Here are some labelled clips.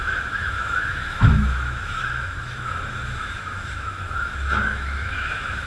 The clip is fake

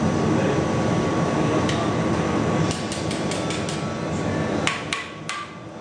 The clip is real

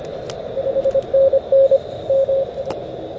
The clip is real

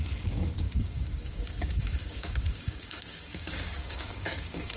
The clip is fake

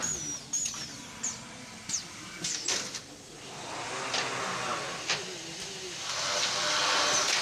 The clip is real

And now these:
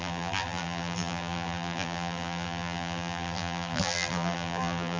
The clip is fake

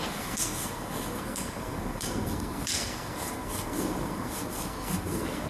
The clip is fake